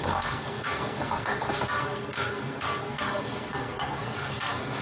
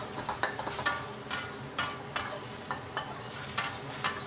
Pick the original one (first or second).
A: second